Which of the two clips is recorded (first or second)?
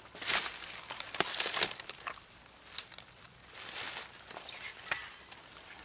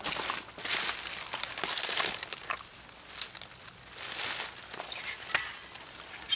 second